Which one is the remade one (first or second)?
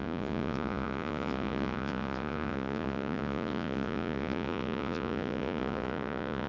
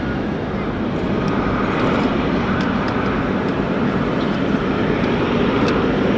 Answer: first